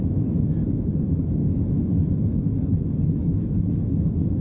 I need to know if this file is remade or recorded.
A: remade